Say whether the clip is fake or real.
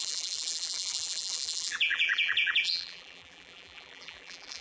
fake